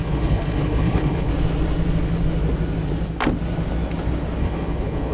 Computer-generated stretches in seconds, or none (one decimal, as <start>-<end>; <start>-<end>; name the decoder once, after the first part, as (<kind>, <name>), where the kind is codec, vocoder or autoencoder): 0.0-1.3 (codec, HILCodec); 4.4-5.1